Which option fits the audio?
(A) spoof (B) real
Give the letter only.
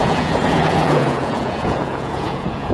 A